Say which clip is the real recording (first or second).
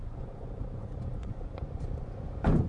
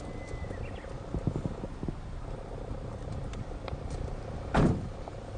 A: second